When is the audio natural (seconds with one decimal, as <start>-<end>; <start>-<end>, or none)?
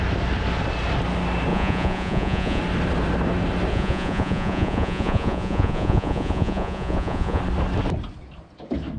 0.0-1.5; 2.6-3.7; 7.4-9.0